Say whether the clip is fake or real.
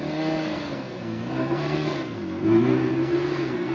fake